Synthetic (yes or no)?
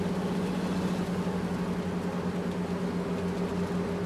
no